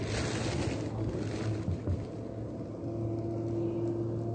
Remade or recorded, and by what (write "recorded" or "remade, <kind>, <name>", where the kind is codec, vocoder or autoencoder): recorded